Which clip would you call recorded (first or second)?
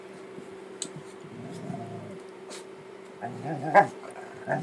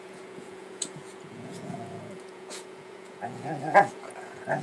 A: first